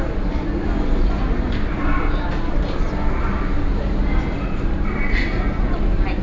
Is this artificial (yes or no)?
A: no